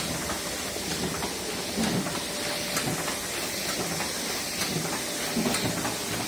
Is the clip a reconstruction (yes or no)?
no